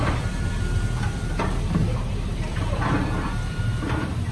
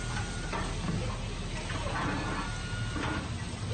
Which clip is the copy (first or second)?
first